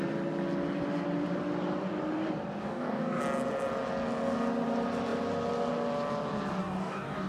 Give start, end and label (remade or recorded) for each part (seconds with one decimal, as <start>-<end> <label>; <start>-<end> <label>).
0.0-2.6 recorded; 2.6-3.2 remade; 3.2-6.6 recorded; 6.6-7.3 remade